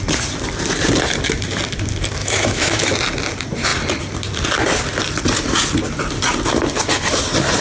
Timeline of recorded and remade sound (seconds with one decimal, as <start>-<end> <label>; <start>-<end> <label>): 0.0-2.2 recorded; 2.2-2.9 remade; 2.9-7.6 recorded